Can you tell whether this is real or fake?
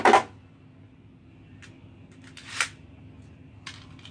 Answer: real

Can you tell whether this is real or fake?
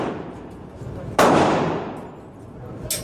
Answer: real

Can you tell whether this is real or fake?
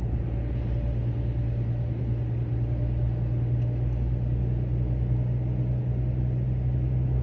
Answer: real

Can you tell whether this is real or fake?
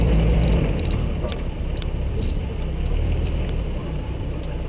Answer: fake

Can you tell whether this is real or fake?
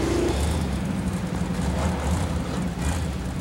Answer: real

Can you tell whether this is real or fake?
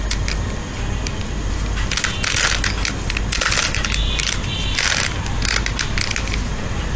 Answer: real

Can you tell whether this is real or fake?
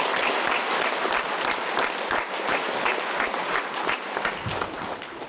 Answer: real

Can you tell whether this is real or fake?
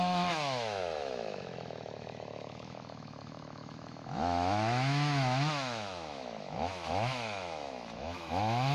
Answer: fake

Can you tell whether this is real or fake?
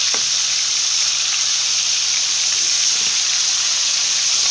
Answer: real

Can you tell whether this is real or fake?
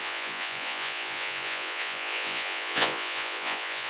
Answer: fake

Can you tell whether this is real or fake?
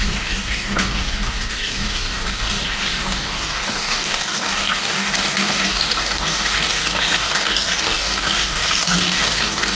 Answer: fake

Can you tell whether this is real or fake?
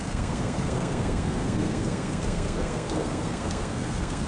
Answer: fake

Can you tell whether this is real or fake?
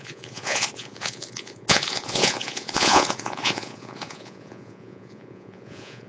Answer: fake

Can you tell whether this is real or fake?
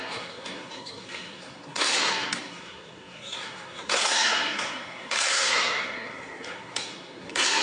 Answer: fake